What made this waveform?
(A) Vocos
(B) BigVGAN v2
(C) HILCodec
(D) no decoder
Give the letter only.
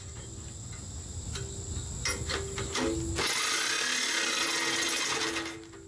D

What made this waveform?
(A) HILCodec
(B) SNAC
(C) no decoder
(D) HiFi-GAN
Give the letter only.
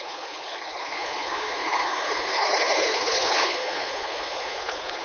A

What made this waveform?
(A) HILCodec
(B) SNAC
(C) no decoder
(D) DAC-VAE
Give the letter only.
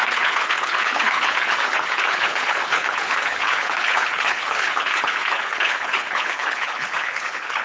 A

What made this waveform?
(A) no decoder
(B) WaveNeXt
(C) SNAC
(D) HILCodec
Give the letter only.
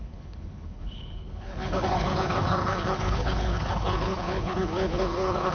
D